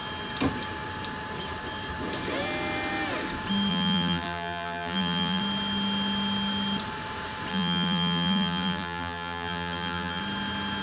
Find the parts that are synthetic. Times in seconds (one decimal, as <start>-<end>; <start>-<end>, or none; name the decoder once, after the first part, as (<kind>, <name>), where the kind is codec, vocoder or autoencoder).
3.7-5.4 (vocoder, BigVGAN v2); 7.5-10.2

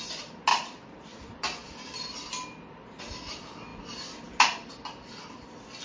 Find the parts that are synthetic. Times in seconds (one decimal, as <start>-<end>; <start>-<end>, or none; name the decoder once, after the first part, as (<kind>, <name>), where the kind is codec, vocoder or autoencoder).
0.5-3.0 (vocoder, BigVGAN v2); 3.7-4.7

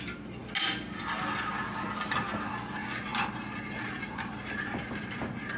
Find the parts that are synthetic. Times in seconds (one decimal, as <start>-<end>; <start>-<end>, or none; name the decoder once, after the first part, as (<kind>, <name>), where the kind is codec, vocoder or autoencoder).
3.1-4.9 (vocoder, BigVGAN v2)

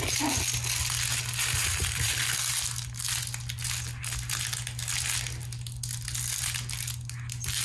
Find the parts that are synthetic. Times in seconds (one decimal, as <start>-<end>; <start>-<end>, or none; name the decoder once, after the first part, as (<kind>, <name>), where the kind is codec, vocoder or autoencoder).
1.6-2.1 (vocoder, BigVGAN v2)

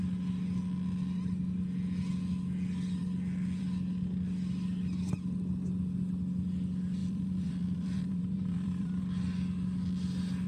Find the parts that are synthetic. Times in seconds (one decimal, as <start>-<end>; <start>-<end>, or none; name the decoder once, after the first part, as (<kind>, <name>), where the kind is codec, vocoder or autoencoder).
7.0-9.0 (vocoder, BigVGAN v2)

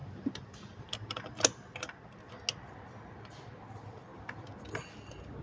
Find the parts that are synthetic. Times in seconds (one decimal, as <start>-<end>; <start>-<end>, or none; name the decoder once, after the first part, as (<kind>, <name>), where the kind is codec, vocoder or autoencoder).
none

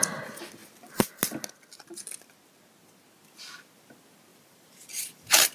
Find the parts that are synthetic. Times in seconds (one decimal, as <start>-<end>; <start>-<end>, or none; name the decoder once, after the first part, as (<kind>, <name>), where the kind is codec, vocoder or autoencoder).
0.6-1.1 (vocoder, BigVGAN v2); 4.3-5.5

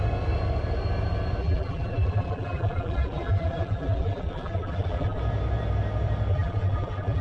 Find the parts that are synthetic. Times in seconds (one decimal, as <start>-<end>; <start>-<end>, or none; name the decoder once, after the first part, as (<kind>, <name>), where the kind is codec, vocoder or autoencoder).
1.4-5.2 (vocoder, BigVGAN v2); 6.3-7.2